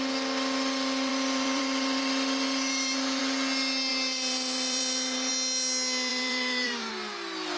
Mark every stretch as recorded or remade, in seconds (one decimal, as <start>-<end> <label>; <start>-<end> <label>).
0.0-1.1 recorded; 1.1-3.2 remade; 3.2-3.9 recorded; 3.9-5.3 remade; 5.3-6.1 recorded; 6.1-6.9 remade; 6.9-7.6 recorded